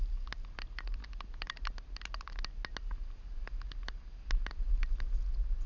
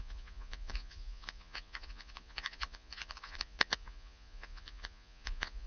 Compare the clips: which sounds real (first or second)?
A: first